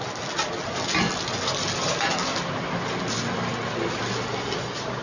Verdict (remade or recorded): recorded